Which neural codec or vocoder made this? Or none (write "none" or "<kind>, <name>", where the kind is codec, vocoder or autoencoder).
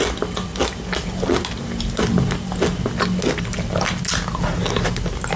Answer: none